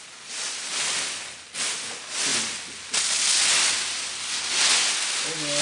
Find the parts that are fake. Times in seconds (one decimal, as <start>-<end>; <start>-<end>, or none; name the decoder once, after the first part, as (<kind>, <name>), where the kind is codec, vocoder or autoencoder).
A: none